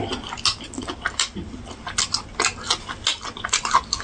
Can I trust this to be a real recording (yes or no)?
yes